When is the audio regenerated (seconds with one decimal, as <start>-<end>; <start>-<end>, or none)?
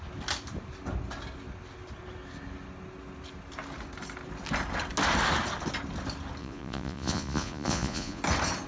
6.4-8.2